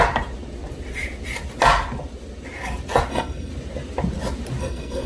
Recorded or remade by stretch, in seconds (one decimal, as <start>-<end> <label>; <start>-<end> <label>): 0.0-3.1 recorded; 3.1-3.5 remade; 3.5-4.6 recorded; 4.6-5.1 remade